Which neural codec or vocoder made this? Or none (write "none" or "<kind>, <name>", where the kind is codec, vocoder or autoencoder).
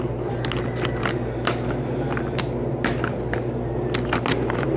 none